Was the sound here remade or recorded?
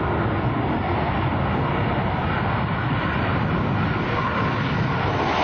recorded